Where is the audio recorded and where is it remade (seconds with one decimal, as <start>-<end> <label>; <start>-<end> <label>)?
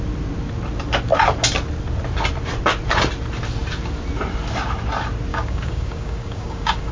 0.0-5.3 recorded; 5.3-6.9 remade